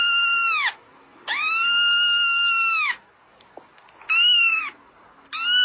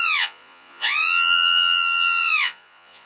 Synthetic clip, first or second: second